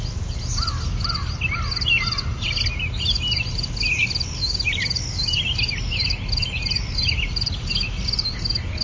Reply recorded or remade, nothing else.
recorded